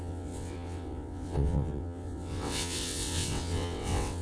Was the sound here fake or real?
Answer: fake